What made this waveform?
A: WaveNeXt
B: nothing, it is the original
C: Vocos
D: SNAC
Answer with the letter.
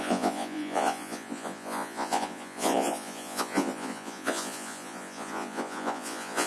C